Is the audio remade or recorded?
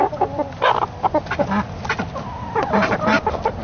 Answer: recorded